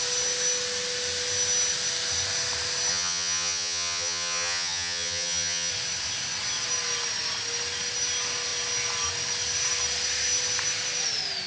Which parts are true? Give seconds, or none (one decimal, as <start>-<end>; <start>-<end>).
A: 0.0-2.9; 5.7-11.5